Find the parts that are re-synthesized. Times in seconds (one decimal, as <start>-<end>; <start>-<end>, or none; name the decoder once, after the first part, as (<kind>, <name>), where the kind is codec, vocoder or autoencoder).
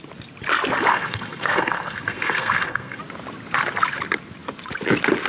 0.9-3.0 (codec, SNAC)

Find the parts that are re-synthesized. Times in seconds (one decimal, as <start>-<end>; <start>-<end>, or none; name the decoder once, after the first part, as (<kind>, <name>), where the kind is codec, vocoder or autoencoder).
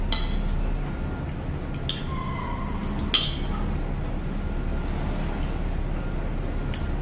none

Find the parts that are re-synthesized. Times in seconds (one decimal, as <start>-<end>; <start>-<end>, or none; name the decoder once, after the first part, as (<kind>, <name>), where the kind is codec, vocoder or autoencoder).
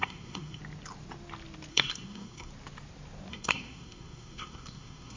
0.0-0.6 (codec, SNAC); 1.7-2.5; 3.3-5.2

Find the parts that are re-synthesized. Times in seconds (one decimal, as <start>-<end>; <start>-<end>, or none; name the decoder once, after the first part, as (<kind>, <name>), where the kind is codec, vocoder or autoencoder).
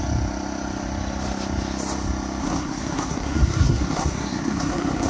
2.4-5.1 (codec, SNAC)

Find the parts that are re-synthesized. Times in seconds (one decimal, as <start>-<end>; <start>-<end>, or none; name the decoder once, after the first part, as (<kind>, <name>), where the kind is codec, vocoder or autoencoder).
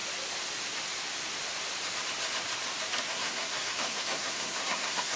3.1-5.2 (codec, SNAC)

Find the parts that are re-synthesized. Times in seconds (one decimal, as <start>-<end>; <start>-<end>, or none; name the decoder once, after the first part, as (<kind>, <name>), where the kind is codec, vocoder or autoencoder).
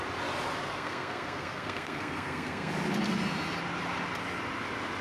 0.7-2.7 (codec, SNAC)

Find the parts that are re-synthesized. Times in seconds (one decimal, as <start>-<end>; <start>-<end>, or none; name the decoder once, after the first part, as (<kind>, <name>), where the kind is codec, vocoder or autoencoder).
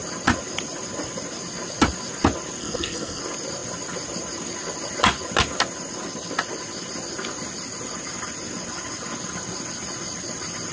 2.6-3.2 (codec, SNAC)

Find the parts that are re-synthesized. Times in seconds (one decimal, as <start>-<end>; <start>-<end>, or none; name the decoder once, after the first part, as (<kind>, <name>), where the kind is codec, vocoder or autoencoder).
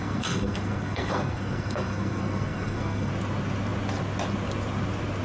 0.0-3.1 (codec, SNAC)